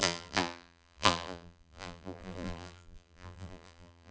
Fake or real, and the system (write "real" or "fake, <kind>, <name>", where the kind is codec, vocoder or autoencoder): fake, vocoder, BigVGAN v2